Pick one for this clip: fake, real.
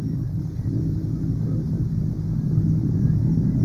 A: real